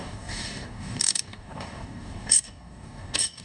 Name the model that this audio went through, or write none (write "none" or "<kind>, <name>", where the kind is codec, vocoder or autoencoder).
codec, DAC